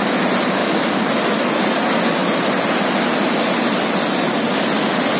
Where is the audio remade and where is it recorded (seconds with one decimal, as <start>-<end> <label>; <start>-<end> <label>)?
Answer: 0.0-0.6 recorded; 0.6-1.1 remade; 1.1-5.2 recorded